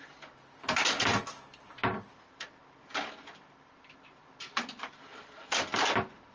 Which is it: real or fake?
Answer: real